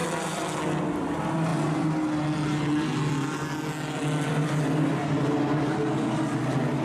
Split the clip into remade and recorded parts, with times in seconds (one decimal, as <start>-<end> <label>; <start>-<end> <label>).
0.0-0.6 remade; 0.6-6.8 recorded